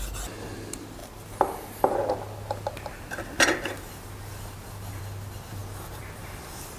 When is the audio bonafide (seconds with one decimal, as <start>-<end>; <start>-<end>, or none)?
0.0-6.8